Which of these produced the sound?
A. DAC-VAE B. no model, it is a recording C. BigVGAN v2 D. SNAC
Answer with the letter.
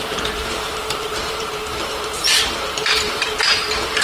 C